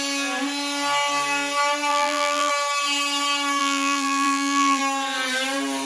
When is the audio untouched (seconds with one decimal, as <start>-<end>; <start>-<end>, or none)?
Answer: 0.0-1.9; 2.5-3.6; 4.8-5.9